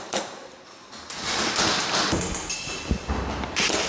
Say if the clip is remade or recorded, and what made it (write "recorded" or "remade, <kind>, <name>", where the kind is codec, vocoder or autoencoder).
recorded